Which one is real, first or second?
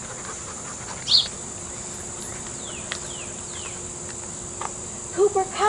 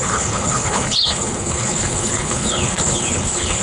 first